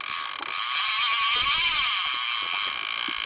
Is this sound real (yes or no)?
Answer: yes